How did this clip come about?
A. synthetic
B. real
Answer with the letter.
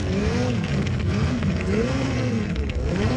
A